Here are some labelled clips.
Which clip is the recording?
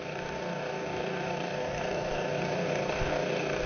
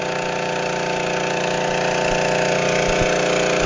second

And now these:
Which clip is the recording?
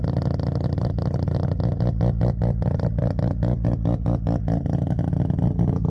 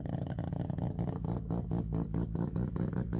first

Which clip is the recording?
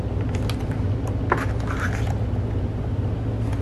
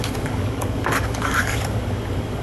first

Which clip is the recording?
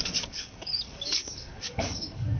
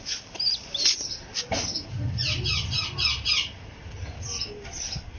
second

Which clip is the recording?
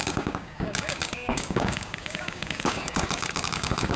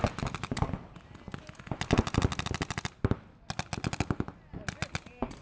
second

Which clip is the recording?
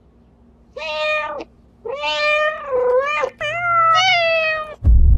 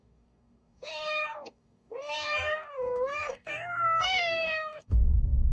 first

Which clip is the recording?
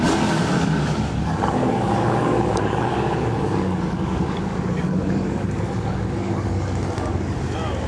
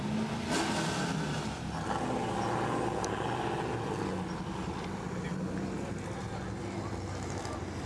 second